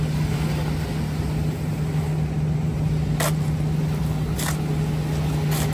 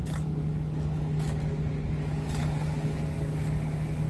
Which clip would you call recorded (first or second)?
first